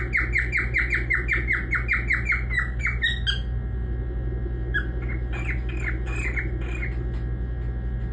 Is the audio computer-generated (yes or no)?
no